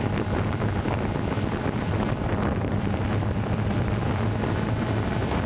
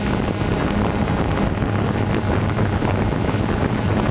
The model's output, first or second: first